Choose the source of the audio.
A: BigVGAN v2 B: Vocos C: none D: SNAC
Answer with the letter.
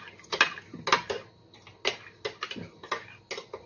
C